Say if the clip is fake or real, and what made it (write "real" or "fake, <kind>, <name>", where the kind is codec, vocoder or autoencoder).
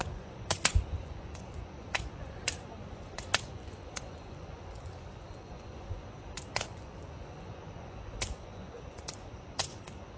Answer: fake, vocoder, Vocos